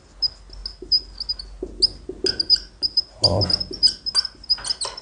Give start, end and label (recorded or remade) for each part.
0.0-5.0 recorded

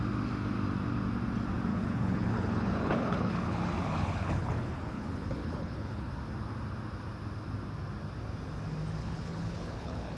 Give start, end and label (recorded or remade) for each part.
0.0-1.7 recorded; 1.7-6.1 remade; 6.1-9.0 recorded; 9.0-10.2 remade

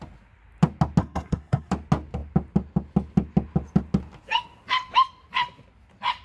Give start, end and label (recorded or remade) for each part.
0.0-1.0 recorded; 1.0-1.7 remade; 1.7-6.2 recorded

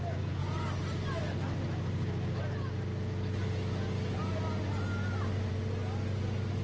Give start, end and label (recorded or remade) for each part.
0.0-6.6 recorded

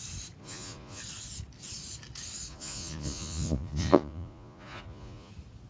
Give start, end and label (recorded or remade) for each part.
0.0-0.4 recorded; 0.4-1.0 remade; 1.0-2.5 recorded; 2.5-5.3 remade; 5.3-5.7 recorded